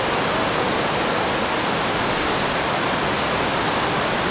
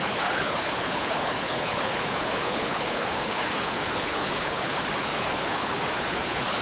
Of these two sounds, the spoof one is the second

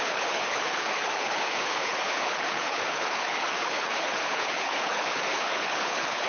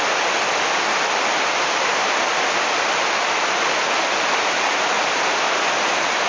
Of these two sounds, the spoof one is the first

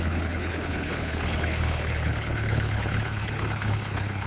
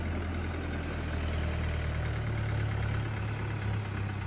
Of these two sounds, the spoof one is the first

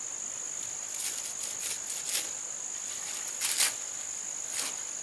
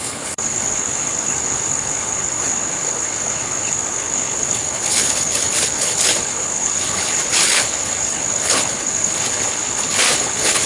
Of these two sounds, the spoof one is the second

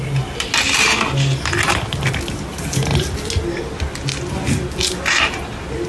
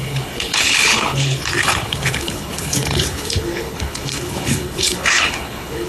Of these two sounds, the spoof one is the second